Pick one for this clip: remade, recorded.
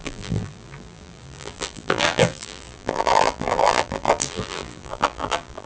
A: remade